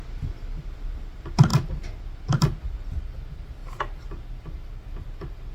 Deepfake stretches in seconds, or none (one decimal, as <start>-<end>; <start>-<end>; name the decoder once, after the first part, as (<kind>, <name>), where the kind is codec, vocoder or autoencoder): none